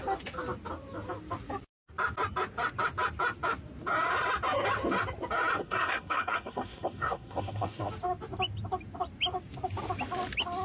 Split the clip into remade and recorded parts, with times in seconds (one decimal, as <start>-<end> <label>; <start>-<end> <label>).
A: 0.0-5.6 recorded; 5.6-7.9 remade; 7.9-10.6 recorded